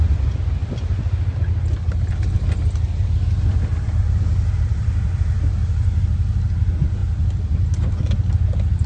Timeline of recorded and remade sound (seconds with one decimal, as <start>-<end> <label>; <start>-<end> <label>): 0.0-0.6 recorded; 0.6-1.4 remade; 1.4-3.7 recorded; 3.7-6.3 remade; 6.3-7.0 recorded; 7.0-7.6 remade; 7.6-8.9 recorded